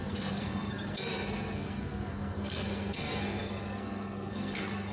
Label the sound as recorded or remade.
remade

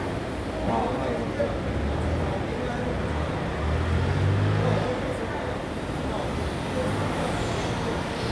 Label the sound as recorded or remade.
recorded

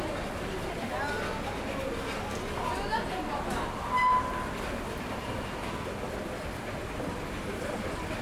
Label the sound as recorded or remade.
recorded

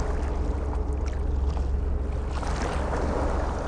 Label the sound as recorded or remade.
recorded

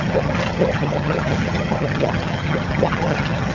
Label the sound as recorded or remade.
remade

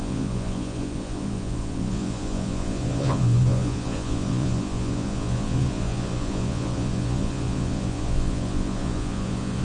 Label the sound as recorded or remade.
remade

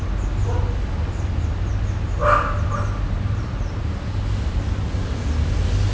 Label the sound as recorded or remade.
recorded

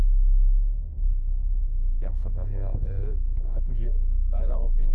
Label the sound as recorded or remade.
remade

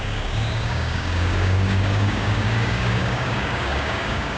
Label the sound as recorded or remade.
remade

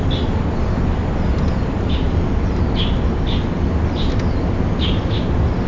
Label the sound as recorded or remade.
recorded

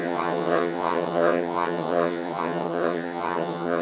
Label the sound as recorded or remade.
remade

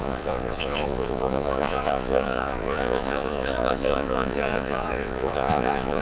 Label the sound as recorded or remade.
remade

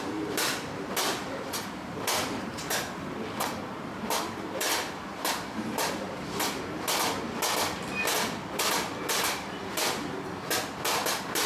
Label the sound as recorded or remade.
recorded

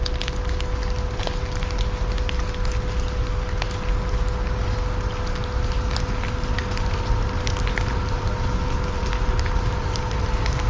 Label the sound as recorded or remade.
recorded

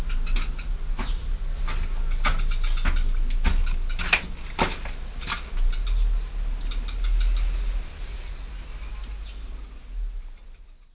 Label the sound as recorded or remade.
recorded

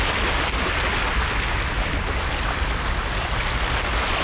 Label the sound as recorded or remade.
recorded